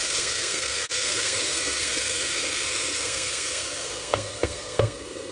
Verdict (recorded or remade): remade